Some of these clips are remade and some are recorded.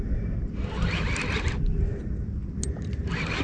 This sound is recorded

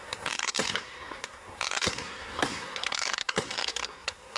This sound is remade